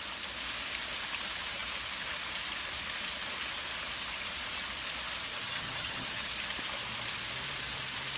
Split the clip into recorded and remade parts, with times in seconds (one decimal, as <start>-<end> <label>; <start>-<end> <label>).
0.0-5.3 recorded; 5.3-6.3 remade; 6.3-8.2 recorded